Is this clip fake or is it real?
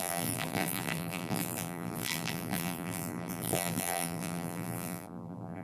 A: fake